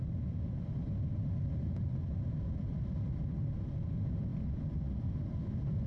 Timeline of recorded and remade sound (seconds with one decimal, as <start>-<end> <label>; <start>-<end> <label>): 0.0-5.9 recorded